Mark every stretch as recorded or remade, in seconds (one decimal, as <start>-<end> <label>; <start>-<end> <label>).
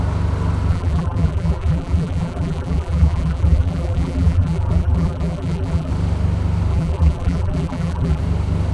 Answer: 0.0-0.7 recorded; 0.7-5.9 remade; 5.9-6.7 recorded; 6.7-8.2 remade; 8.2-8.7 recorded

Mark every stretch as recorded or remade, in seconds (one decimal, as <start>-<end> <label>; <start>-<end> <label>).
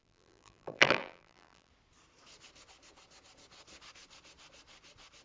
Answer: 0.0-1.7 remade; 1.7-5.2 recorded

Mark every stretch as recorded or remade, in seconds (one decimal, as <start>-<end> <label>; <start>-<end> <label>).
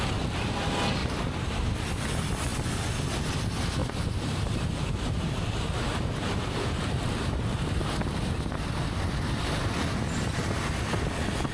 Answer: 0.0-1.0 recorded; 1.0-2.1 remade; 2.1-3.8 recorded; 3.8-8.4 remade; 8.4-11.5 recorded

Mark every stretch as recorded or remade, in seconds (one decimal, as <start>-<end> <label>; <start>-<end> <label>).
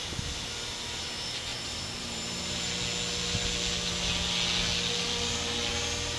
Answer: 0.0-1.5 recorded; 1.5-2.7 remade; 2.7-6.2 recorded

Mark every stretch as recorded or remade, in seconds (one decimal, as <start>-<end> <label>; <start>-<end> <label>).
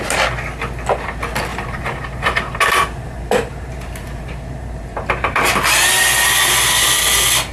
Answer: 0.0-1.5 recorded; 1.5-5.4 remade; 5.4-7.5 recorded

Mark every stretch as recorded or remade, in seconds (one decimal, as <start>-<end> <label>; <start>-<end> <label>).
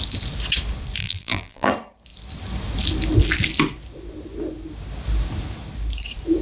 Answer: 0.0-1.0 recorded; 1.0-1.7 remade; 1.7-6.4 recorded